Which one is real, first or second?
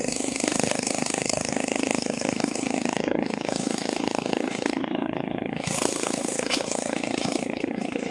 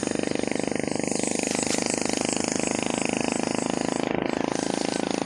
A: second